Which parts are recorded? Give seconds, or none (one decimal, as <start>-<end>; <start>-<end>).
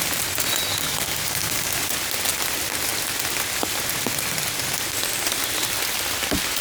0.0-0.7; 1.9-6.6